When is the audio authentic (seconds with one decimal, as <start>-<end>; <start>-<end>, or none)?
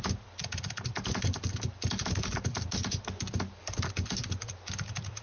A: 0.0-5.2